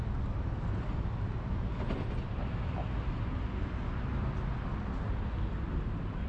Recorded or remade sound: recorded